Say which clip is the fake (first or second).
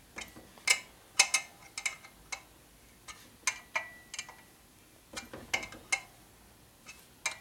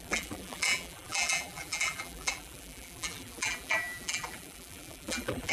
second